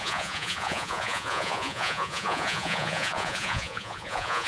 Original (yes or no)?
no